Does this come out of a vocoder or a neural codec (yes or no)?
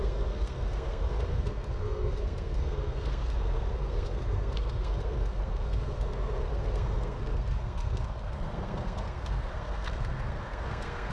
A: yes